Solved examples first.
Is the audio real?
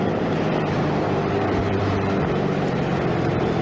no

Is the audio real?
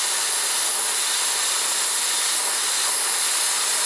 yes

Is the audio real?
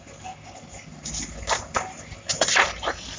yes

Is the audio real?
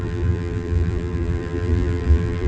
no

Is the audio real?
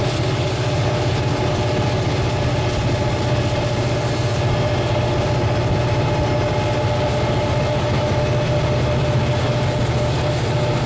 yes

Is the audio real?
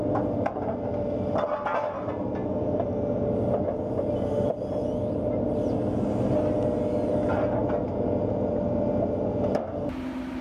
yes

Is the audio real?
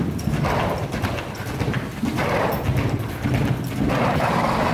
yes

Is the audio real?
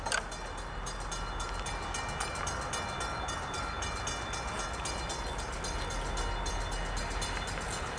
yes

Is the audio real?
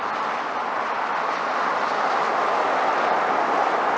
yes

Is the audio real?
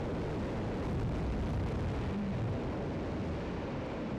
yes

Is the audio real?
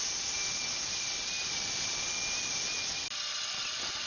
yes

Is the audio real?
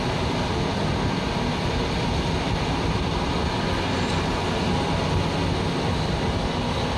yes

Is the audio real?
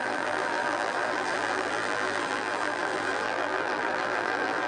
no